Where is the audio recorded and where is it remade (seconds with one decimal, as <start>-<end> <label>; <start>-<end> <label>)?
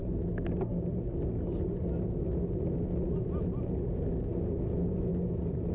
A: 0.0-5.7 recorded